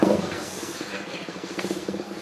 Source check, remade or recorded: remade